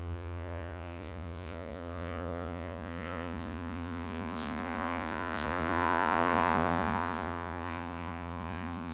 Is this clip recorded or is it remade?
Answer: remade